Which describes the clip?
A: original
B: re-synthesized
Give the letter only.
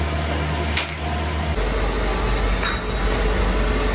A